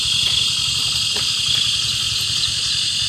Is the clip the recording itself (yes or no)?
yes